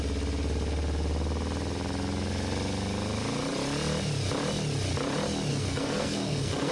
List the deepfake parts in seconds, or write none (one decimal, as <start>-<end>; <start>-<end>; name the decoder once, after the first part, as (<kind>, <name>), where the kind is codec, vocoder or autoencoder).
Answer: 5.5-6.7 (codec, SNAC)